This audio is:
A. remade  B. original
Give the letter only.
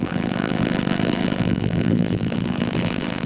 A